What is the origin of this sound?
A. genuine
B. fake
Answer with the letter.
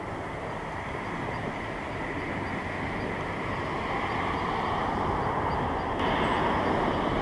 A